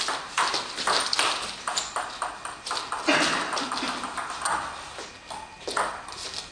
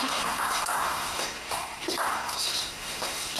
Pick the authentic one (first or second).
first